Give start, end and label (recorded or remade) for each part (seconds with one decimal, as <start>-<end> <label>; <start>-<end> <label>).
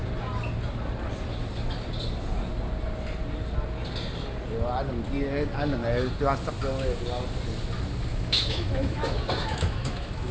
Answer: 0.0-8.1 recorded; 8.1-10.3 remade